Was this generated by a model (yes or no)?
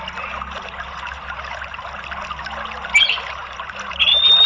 no